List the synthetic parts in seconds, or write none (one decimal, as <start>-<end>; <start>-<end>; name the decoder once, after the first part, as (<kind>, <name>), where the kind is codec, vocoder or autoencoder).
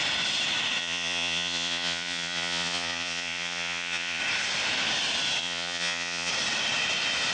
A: 0.8-4.2 (vocoder, Vocos); 5.4-6.3